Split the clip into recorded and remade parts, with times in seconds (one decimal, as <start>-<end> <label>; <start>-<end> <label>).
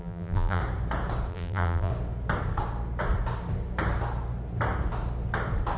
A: 0.0-0.6 remade; 0.6-1.3 recorded; 1.3-1.9 remade; 1.9-5.8 recorded